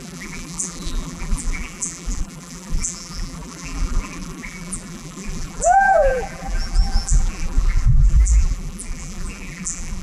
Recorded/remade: remade